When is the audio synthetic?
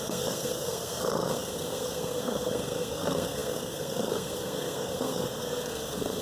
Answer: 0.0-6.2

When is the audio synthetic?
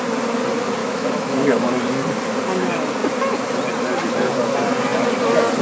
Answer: 0.8-1.7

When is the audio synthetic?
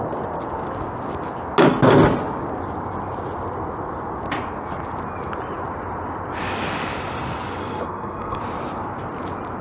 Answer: 7.6-8.4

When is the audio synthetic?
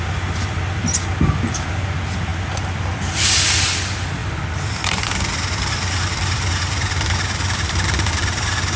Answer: 4.2-8.8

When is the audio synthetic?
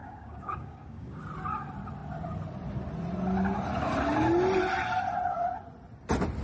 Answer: 0.0-1.2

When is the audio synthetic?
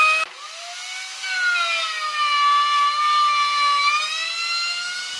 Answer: none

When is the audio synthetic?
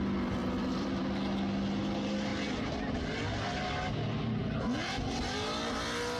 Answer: 0.4-1.0